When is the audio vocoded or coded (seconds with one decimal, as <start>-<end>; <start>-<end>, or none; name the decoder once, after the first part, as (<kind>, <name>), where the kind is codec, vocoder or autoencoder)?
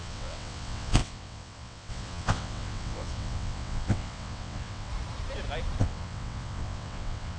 0.0-4.9 (vocoder, WaveNeXt); 5.8-7.4